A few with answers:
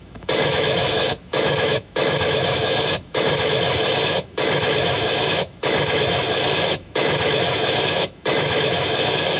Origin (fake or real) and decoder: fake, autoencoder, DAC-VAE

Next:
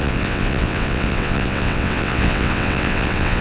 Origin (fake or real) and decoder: fake, vocoder, WaveNeXt